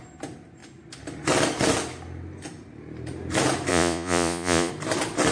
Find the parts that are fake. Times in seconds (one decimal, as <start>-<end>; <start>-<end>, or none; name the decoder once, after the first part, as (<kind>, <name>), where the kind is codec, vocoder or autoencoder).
3.7-4.7 (vocoder, Vocos)